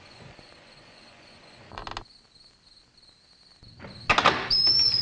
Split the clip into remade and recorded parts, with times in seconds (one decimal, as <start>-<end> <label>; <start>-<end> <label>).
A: 0.0-1.8 remade; 1.8-5.0 recorded